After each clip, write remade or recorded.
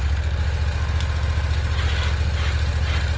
recorded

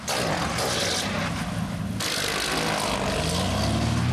recorded